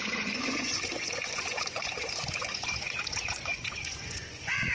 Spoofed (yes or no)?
yes